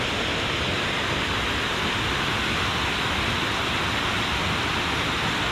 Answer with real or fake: real